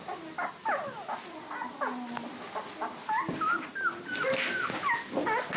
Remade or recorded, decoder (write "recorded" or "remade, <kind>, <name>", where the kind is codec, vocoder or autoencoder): recorded